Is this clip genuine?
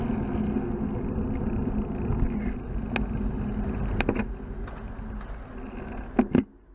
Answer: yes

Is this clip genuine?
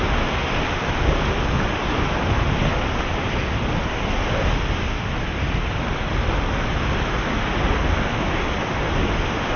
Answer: yes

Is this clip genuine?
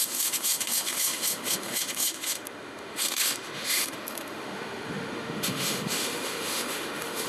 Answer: no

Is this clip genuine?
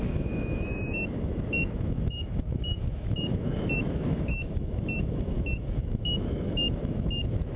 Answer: no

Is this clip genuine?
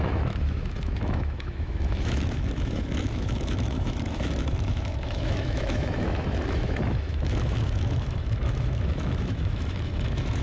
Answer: no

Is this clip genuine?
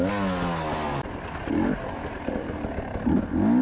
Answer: yes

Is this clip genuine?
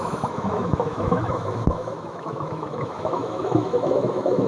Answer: no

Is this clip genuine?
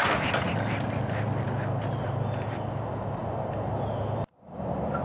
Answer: yes